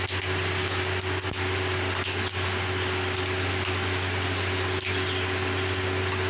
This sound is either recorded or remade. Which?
recorded